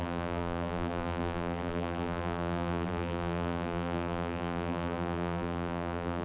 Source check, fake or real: fake